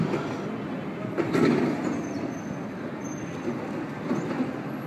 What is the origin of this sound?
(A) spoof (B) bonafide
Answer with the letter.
B